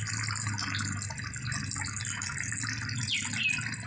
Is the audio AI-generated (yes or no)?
no